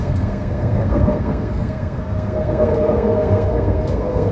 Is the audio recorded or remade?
remade